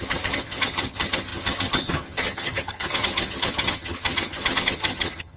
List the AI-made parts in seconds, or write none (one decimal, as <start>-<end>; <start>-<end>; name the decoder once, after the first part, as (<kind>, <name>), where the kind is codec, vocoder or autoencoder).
0.0-5.4 (vocoder, HiFi-GAN)